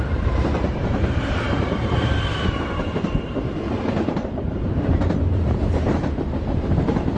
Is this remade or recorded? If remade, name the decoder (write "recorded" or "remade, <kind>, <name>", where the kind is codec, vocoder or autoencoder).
remade, vocoder, BigVGAN v2